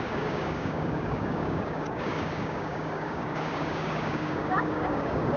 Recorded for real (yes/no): no